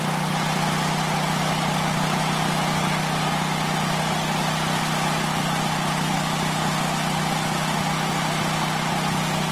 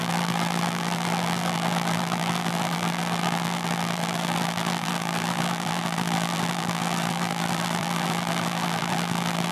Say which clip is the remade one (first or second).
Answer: second